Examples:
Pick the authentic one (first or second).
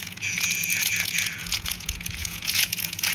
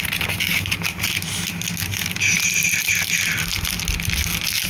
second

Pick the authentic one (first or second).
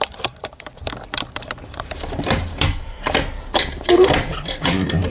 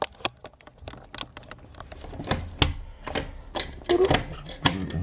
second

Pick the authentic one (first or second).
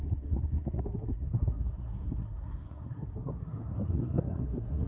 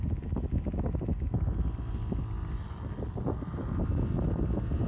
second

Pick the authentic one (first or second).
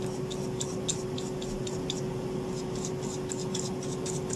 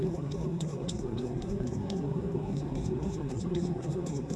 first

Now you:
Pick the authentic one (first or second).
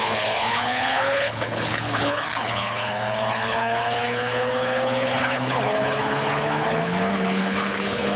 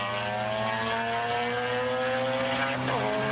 second